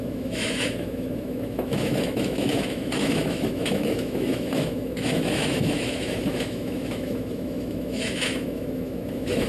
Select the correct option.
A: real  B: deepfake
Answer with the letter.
B